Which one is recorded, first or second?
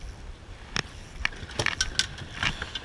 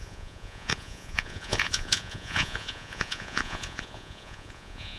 first